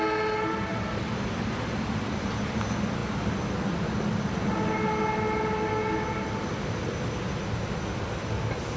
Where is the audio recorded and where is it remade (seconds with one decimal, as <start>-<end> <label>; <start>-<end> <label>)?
0.0-8.8 recorded